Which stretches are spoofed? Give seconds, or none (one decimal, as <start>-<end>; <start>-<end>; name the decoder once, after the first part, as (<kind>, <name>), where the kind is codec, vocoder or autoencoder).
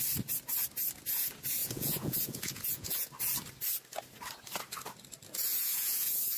1.6-3.1 (vocoder, Vocos); 5.4-6.4